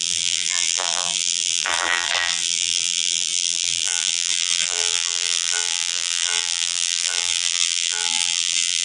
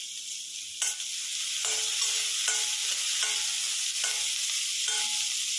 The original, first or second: second